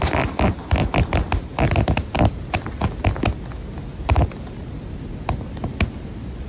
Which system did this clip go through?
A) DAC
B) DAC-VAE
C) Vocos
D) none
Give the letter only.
D